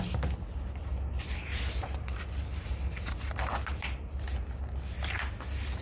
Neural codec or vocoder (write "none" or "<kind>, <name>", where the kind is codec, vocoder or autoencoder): none